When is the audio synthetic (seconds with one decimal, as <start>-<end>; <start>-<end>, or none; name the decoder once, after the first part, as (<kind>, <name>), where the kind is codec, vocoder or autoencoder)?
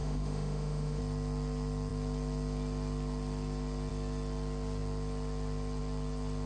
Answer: 0.0-1.0 (autoencoder, DAC-VAE)